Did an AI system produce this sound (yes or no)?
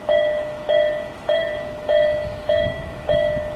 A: yes